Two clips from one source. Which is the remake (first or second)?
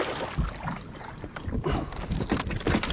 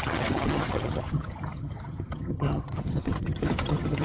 second